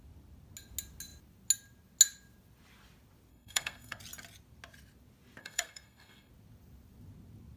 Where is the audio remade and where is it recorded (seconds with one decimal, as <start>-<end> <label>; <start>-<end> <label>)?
0.0-3.3 recorded; 3.3-4.0 remade; 4.0-5.4 recorded; 5.4-6.3 remade; 6.3-7.6 recorded